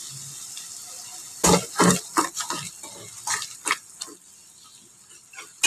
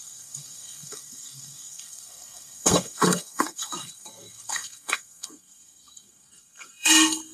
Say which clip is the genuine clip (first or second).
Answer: first